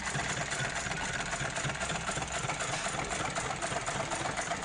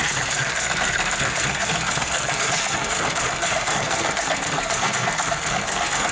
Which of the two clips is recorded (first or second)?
first